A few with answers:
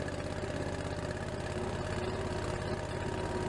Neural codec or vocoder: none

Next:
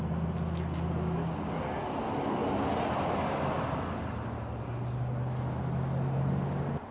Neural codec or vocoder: none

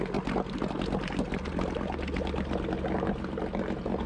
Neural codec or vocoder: none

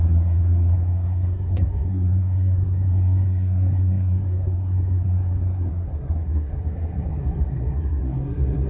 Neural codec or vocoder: codec, SNAC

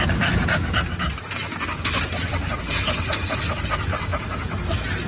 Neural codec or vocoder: none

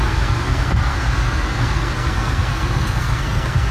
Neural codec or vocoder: codec, SNAC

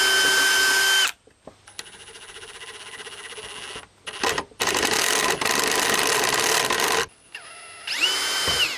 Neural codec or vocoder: none